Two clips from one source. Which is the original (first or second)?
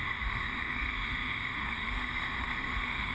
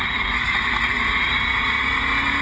second